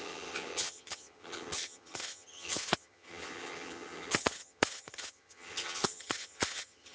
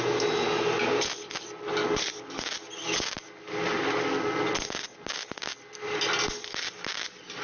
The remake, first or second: first